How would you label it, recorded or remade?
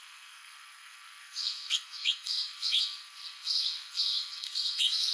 remade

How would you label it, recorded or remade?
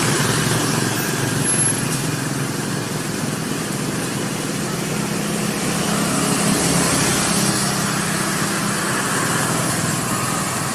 recorded